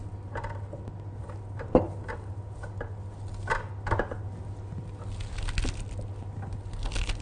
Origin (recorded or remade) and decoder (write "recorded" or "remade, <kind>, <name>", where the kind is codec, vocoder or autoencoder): recorded